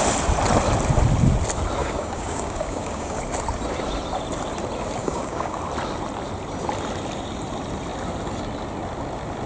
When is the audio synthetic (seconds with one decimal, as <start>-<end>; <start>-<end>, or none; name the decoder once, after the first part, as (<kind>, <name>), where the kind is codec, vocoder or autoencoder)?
1.8-3.2 (codec, DAC); 5.0-5.6